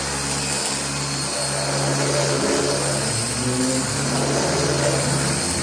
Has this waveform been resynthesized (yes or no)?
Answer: no